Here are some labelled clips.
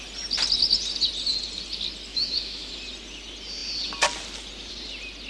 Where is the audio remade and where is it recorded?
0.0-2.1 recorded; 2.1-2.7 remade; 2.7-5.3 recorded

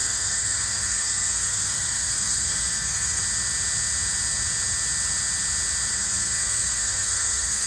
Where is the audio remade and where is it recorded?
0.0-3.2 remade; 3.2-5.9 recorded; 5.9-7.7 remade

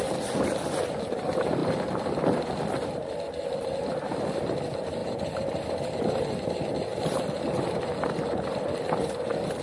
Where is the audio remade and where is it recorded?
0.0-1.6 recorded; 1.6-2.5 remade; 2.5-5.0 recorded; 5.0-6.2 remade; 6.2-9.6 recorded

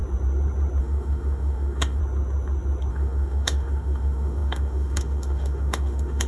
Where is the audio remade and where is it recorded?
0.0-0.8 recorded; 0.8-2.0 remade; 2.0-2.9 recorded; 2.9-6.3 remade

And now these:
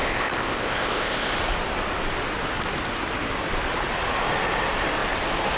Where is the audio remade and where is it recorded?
0.0-1.3 remade; 1.3-5.6 recorded

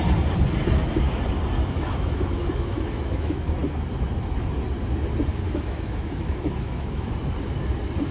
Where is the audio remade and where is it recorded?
0.0-1.6 recorded; 1.6-3.5 remade; 3.5-5.3 recorded; 5.3-7.1 remade; 7.1-8.1 recorded